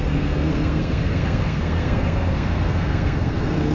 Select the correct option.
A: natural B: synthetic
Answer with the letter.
B